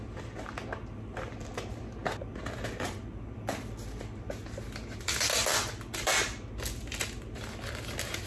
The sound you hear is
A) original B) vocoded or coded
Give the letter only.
A